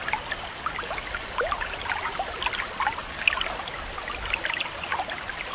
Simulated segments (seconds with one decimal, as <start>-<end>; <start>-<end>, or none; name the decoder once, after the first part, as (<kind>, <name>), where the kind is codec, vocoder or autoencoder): none